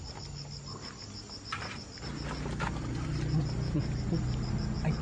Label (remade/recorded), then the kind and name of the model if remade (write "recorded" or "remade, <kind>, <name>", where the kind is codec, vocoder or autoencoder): recorded